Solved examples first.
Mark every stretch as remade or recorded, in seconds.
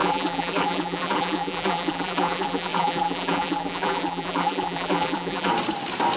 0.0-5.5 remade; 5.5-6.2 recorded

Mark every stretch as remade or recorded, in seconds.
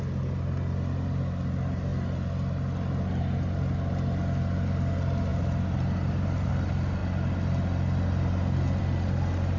0.0-5.3 recorded; 5.3-6.5 remade; 6.5-9.6 recorded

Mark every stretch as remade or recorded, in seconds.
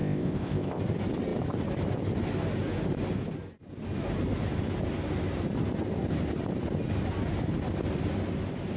0.0-0.8 remade; 0.8-8.8 recorded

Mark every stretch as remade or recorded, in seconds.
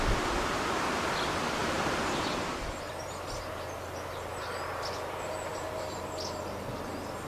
0.0-1.6 recorded; 1.6-2.9 remade; 2.9-5.5 recorded; 5.5-6.1 remade; 6.1-7.3 recorded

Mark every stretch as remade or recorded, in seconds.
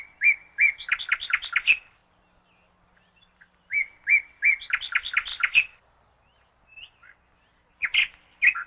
0.0-8.7 recorded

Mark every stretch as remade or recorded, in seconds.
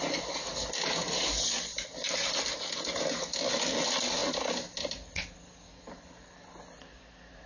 0.0-7.5 recorded